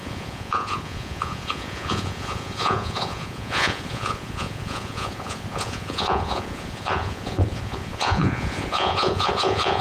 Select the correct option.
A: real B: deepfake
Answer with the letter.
B